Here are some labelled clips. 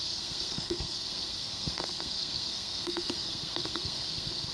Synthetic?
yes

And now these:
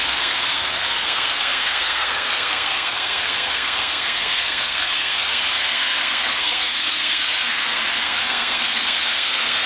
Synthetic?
yes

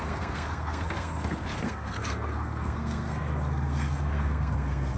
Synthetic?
yes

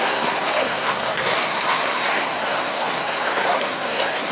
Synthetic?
yes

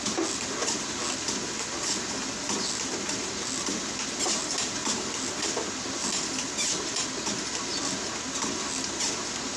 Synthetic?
no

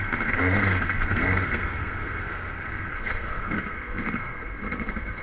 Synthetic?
yes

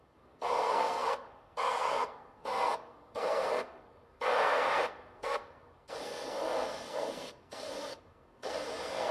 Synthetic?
yes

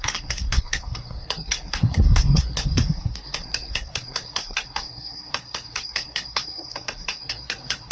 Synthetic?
yes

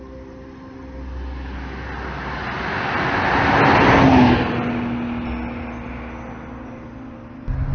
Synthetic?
no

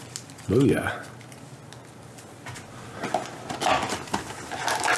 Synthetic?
no